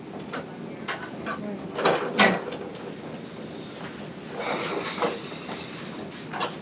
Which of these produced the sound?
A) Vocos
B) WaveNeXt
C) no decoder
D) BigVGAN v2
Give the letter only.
C